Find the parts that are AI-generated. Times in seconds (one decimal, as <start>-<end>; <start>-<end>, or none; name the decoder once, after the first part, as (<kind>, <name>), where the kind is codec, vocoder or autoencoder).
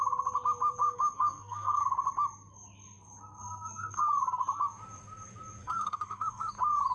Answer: 0.8-1.8 (codec, SNAC); 3.4-4.0; 5.6-6.5